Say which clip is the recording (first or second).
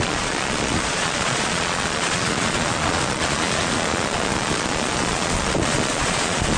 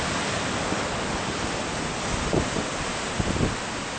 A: second